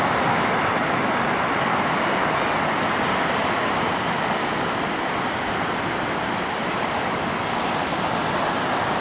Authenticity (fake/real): real